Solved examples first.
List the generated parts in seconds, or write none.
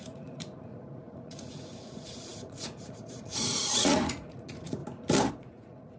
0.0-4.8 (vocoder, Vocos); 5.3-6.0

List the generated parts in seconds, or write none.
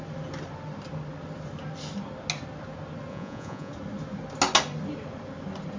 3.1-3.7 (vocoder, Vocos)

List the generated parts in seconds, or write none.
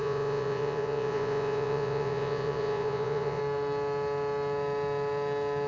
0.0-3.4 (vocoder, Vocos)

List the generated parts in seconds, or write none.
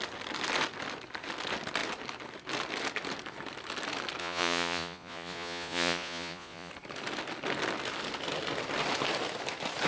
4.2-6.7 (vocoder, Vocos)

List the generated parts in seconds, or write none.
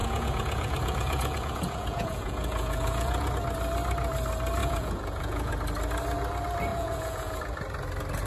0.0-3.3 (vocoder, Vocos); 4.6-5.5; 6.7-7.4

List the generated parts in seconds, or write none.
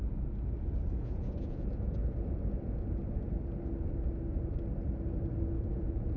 0.9-2.0 (vocoder, Vocos); 5.7-6.2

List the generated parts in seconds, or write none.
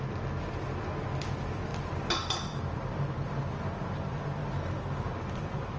none